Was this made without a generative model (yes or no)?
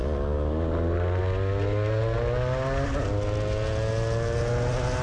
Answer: yes